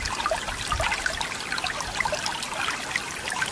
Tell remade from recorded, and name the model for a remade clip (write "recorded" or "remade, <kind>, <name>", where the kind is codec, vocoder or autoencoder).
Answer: recorded